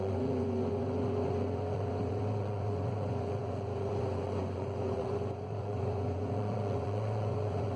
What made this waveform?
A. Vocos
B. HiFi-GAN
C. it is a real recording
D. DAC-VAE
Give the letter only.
A